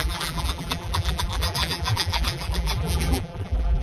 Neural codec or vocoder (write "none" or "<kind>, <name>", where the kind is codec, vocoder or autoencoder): vocoder, BigVGAN v2